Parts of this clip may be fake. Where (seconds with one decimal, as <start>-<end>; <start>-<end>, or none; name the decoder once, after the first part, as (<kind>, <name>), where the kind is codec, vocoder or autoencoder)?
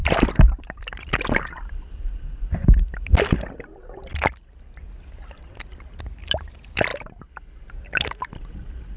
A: 0.0-4.1 (vocoder, BigVGAN v2); 5.5-6.9; 8.4-9.0